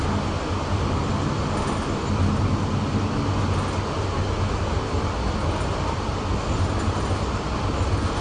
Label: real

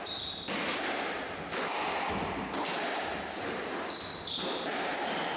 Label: real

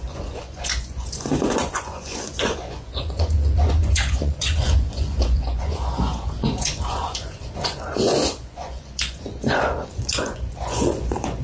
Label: fake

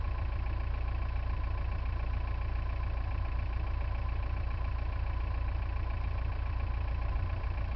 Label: real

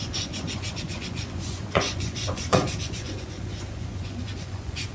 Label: fake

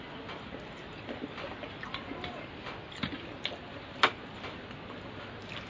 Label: real